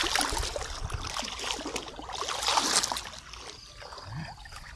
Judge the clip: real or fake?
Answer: real